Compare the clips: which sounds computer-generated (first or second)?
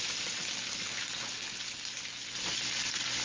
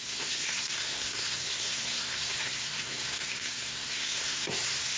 second